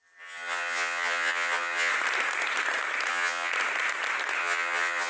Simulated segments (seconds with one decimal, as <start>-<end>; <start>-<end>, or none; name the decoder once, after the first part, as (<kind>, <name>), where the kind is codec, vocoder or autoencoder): 0.0-1.9 (vocoder, HiFi-GAN); 3.1-3.5; 4.4-5.1